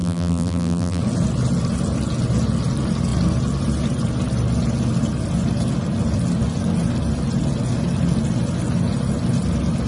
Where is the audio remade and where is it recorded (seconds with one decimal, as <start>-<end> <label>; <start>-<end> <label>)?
0.0-1.0 remade; 1.0-9.9 recorded